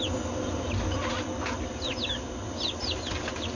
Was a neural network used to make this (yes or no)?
no